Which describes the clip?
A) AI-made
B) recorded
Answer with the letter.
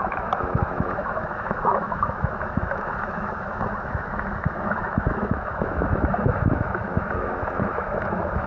A